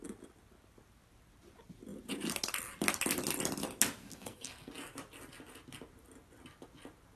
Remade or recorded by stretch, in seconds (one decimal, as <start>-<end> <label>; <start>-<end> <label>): 0.0-4.0 recorded; 4.0-4.7 remade; 4.7-7.2 recorded